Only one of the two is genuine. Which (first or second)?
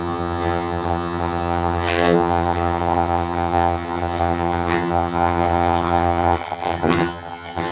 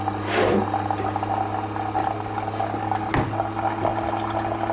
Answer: second